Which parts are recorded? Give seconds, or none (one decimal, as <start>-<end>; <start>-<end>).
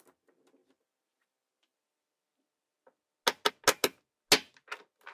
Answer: 0.0-5.1